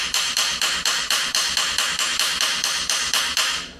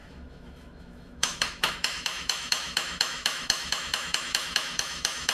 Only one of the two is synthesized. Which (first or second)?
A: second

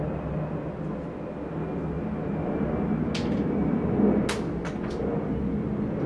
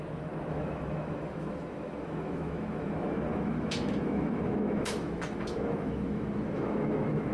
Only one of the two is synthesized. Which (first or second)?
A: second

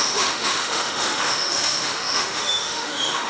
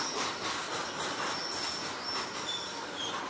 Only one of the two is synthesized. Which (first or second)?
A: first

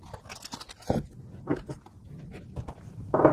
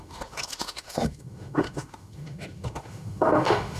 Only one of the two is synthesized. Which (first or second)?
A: second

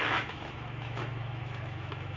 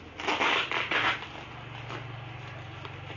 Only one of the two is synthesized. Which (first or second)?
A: first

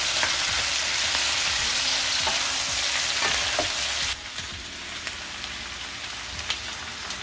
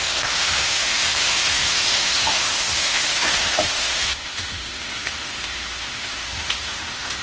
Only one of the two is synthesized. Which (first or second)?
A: second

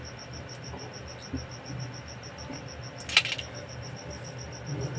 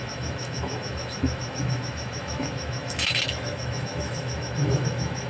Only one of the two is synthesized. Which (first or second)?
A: second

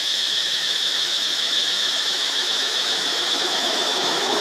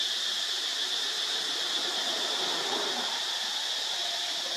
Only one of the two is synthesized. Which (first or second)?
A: first